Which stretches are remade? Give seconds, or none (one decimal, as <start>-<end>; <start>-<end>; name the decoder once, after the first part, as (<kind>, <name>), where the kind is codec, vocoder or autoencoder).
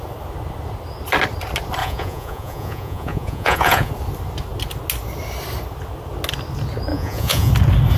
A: 1.8-3.9 (vocoder, Vocos); 6.9-7.5